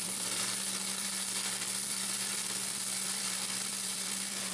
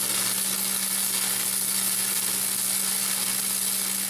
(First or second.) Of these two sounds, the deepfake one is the first